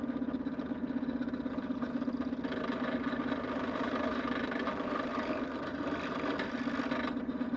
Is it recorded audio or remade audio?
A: recorded